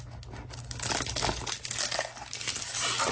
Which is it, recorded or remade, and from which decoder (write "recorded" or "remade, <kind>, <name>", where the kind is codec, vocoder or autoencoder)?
recorded